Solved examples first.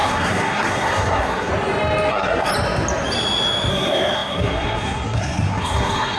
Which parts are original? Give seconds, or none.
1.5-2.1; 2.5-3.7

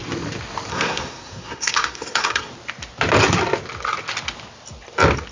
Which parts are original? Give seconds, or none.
0.0-0.7; 2.5-5.3